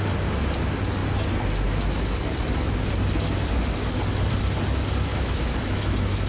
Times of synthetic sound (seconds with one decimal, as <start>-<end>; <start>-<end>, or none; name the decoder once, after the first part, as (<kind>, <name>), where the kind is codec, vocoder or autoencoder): 5.1-6.3 (autoencoder, DAC-VAE)